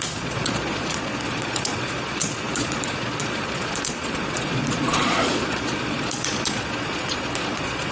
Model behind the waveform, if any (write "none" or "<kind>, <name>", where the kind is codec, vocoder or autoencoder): vocoder, Vocos